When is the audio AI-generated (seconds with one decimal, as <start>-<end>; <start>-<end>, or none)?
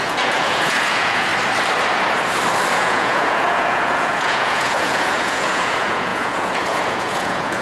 0.0-1.3; 2.7-7.6